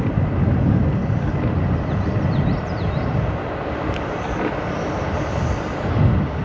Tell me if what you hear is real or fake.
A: real